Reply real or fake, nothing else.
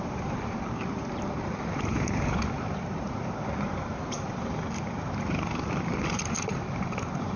fake